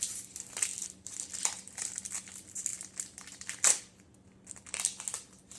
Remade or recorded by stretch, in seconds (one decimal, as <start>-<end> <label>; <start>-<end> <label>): 0.0-5.6 recorded